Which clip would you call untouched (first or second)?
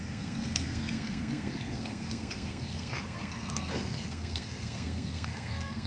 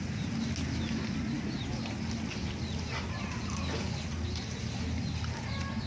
second